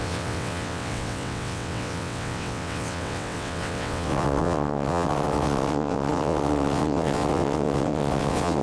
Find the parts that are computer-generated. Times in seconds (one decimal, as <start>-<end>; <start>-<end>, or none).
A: 0.0-8.6